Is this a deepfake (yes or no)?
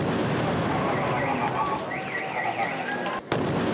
no